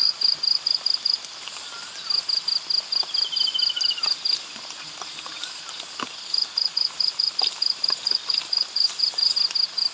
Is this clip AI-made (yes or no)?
no